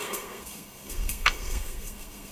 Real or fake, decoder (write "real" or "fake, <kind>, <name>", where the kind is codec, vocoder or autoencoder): fake, codec, SNAC